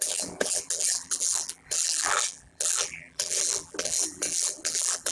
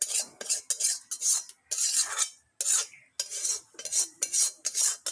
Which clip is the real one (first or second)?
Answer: second